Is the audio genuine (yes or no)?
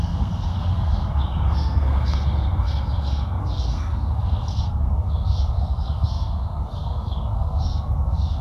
no